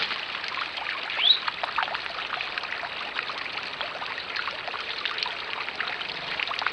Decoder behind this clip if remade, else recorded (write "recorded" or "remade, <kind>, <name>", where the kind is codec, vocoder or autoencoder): recorded